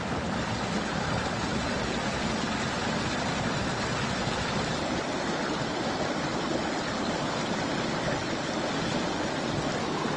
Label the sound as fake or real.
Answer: real